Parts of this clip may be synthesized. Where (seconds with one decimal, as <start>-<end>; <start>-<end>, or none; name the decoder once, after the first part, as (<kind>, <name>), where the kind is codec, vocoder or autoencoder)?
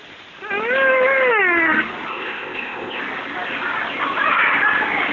2.1-3.0 (codec, ZipCodec)